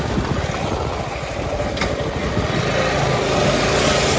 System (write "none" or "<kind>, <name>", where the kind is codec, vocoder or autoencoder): none